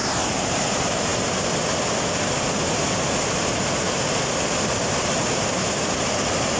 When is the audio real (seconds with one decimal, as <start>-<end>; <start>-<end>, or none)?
1.1-5.1

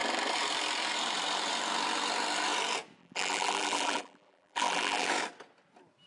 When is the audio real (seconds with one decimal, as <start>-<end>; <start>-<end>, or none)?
0.0-3.0; 5.1-6.1

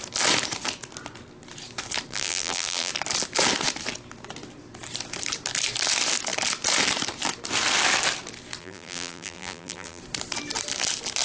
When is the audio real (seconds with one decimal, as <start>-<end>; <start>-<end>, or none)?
0.0-2.1; 2.9-8.6; 10.0-11.2

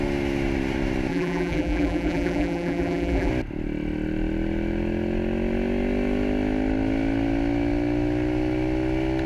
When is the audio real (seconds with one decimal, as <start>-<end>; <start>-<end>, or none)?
0.0-1.1; 3.3-9.3

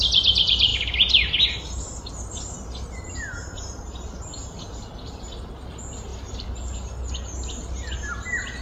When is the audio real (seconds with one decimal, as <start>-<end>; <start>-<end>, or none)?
0.0-0.7; 2.1-6.1; 6.6-8.6

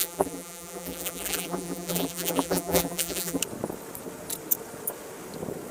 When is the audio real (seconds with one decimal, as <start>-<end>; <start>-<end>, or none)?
3.4-5.7

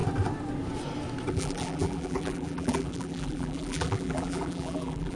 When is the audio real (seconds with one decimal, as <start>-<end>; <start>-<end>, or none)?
0.0-1.3